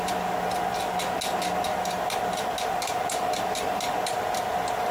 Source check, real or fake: real